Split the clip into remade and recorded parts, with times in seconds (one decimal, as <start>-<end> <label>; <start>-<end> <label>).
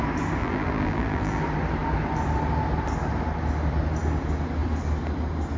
0.0-0.4 recorded; 0.4-1.4 remade; 1.4-5.6 recorded